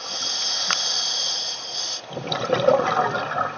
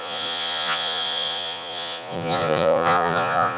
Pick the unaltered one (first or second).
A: first